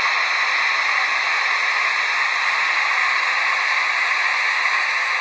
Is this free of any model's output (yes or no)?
yes